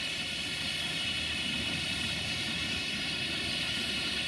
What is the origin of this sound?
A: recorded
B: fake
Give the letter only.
B